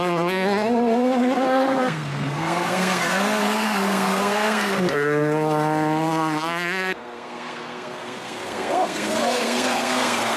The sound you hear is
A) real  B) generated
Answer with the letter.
B